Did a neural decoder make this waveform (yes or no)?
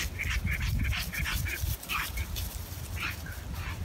no